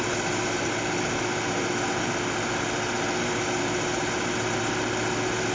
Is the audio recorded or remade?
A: recorded